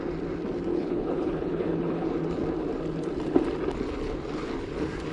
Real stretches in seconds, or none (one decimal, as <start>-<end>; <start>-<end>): 0.0-0.7; 2.1-5.1